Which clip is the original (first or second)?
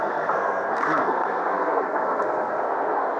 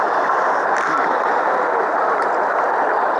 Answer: second